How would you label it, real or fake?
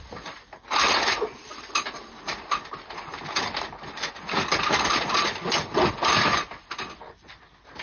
real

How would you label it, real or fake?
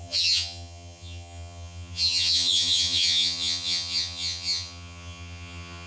fake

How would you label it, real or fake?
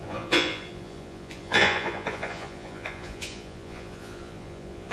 fake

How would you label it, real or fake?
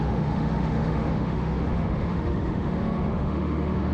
fake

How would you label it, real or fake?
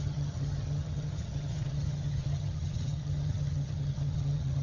fake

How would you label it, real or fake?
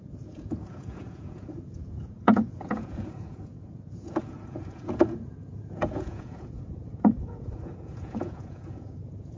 fake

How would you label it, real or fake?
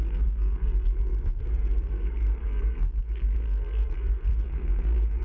fake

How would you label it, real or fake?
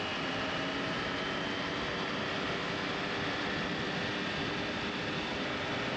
real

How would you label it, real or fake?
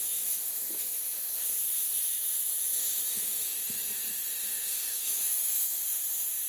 fake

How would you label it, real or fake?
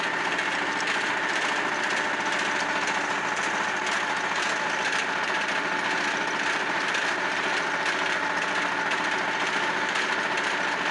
real